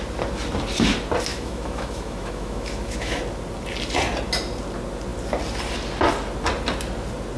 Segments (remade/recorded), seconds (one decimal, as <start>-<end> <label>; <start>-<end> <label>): 0.0-1.3 recorded; 1.3-3.2 remade; 3.2-7.4 recorded